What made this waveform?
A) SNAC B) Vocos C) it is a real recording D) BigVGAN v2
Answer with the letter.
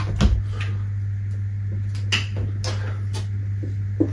C